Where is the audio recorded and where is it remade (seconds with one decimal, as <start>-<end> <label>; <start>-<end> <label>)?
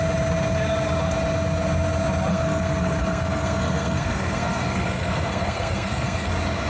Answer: 0.0-2.3 recorded; 2.3-6.3 remade; 6.3-6.7 recorded